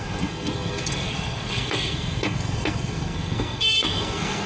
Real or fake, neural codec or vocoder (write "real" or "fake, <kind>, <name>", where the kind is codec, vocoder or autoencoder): fake, codec, SNAC